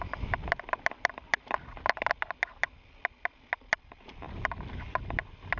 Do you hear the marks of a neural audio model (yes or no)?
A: no